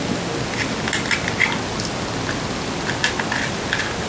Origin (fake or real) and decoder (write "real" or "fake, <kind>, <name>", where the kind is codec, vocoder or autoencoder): real